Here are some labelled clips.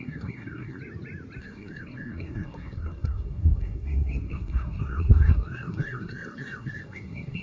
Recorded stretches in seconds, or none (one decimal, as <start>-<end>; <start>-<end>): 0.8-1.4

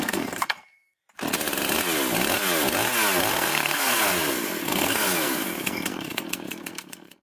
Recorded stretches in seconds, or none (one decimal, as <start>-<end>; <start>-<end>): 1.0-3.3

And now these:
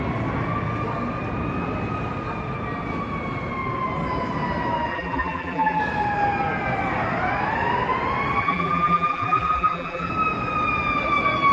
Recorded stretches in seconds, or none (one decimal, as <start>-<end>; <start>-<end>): 0.0-4.9; 5.8-8.4; 10.1-11.5

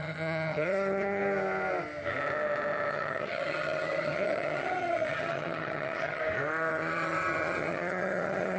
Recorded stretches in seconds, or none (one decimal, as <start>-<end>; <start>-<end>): 1.2-2.9; 6.2-6.7